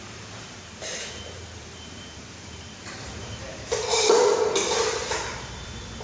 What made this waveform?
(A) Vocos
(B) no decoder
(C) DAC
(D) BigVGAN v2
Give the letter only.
D